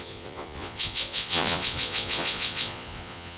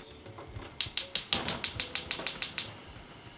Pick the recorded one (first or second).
second